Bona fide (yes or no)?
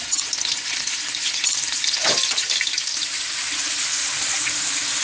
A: yes